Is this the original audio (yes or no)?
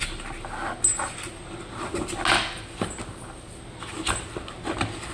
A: yes